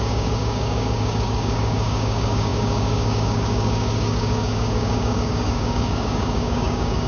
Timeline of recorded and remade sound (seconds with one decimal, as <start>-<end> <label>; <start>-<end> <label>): 0.0-7.1 remade